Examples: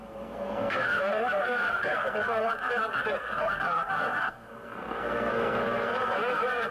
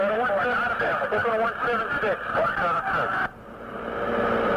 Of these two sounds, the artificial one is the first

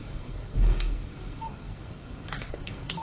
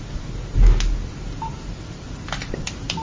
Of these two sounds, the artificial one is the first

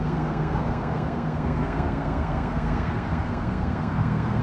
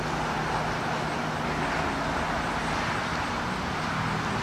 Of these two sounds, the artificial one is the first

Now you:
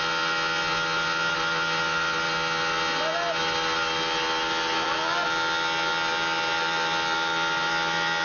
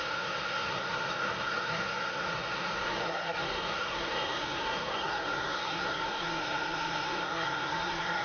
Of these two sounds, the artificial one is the second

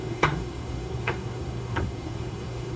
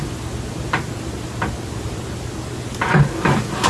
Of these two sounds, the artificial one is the first